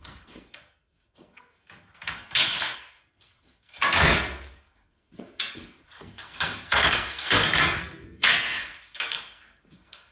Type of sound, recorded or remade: remade